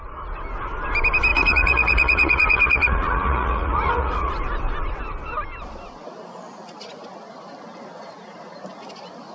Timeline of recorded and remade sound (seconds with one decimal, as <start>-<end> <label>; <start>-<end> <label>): 0.0-1.3 recorded; 1.3-4.3 remade; 4.3-9.3 recorded